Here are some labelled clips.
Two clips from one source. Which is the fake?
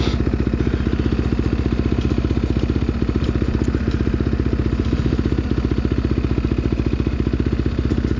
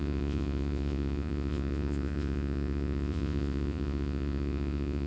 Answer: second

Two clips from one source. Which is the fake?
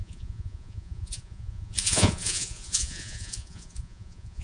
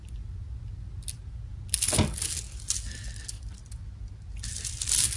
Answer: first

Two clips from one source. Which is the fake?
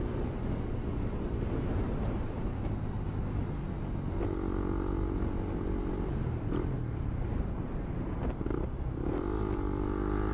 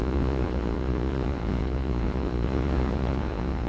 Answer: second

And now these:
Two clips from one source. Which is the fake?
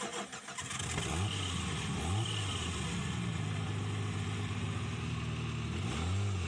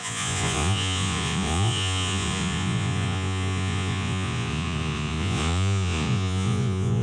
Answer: second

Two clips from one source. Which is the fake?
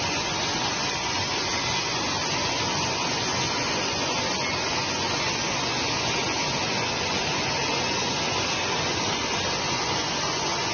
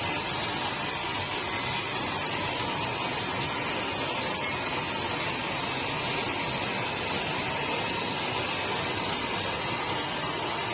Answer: first